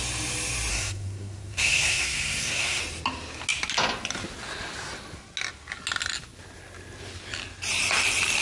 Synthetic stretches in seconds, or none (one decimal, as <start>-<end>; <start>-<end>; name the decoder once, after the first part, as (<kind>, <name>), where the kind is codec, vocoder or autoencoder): 0.7-2.8 (codec, SNAC)